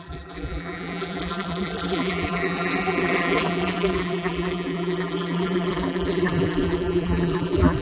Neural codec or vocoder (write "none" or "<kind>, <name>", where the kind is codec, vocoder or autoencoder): vocoder, BigVGAN v2